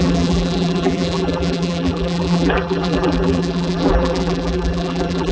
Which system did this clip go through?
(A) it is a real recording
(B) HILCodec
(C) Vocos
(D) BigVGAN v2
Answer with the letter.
D